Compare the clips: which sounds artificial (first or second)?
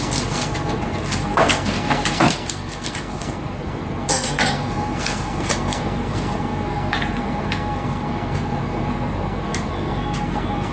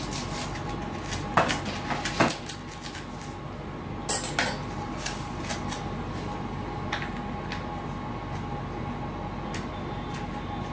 first